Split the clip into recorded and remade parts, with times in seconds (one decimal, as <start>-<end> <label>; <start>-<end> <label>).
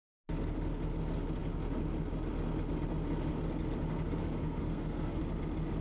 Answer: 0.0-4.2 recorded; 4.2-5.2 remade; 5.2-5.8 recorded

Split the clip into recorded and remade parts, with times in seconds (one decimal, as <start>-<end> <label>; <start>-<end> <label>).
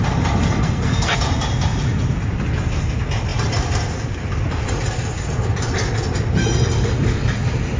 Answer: 0.0-0.4 recorded; 0.4-1.2 remade; 1.2-7.8 recorded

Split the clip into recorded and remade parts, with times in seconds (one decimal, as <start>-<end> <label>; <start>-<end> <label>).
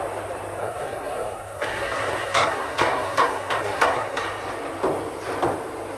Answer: 0.0-0.6 recorded; 0.6-4.2 remade; 4.2-6.0 recorded